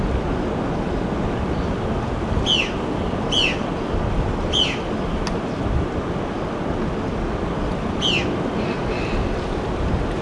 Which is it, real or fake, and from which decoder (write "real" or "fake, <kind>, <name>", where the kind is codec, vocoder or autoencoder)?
real